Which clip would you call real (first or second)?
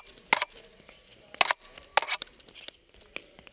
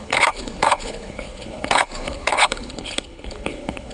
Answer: first